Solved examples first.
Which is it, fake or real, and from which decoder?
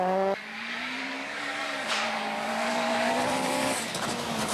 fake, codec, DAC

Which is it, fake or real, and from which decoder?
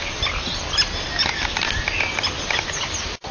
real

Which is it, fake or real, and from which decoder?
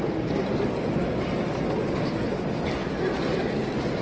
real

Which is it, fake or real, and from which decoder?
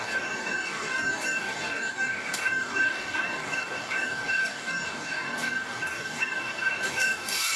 fake, codec, DAC